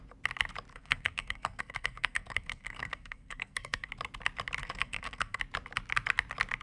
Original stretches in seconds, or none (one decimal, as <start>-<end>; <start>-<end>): 0.0-0.7; 3.9-4.6; 5.4-6.6